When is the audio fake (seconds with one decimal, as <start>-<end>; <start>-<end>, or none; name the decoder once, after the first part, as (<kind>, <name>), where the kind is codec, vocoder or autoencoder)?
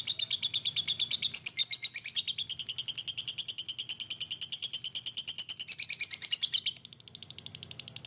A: none